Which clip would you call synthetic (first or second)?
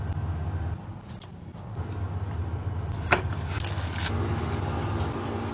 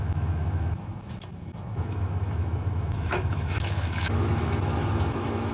second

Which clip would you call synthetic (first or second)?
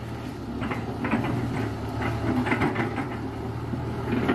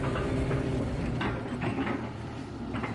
second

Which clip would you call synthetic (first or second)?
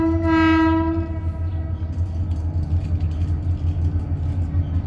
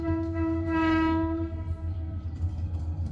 second